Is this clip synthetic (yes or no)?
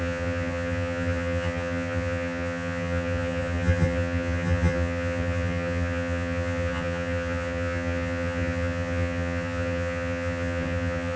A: yes